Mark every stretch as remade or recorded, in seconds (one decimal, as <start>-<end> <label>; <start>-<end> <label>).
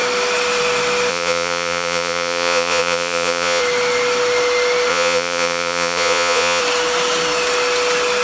0.0-1.1 recorded; 1.1-3.6 remade; 3.6-4.9 recorded; 4.9-6.6 remade; 6.6-8.2 recorded